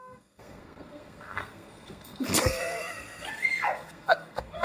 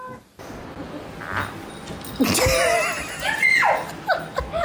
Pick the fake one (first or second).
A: first